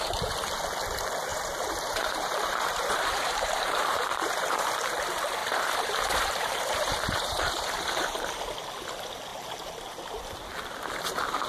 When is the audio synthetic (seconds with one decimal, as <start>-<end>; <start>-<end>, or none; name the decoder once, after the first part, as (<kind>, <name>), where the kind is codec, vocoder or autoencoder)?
1.3-4.7 (vocoder, BigVGAN v2); 5.4-8.4; 9.3-10.4